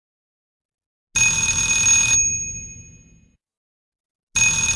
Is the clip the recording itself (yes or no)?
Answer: yes